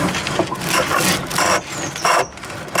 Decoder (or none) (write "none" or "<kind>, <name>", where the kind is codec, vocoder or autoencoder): none